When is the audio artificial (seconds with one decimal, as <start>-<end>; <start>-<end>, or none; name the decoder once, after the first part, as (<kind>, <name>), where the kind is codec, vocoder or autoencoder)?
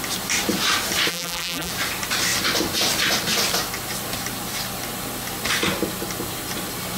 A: 1.1-1.7 (vocoder, BigVGAN v2)